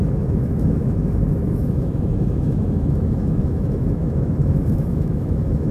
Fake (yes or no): yes